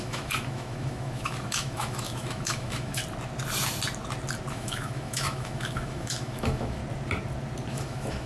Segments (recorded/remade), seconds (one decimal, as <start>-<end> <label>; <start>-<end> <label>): 0.0-3.0 remade; 3.0-4.5 recorded; 4.5-6.8 remade; 6.8-7.7 recorded; 7.7-8.3 remade